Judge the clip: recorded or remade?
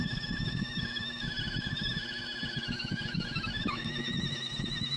remade